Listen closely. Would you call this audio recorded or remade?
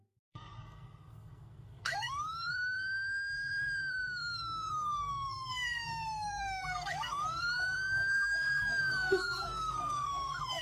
remade